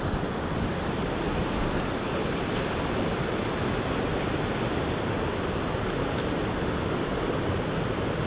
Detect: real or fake real